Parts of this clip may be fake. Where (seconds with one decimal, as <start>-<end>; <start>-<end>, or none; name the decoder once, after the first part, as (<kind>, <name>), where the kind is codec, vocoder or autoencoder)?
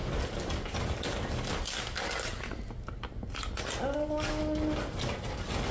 none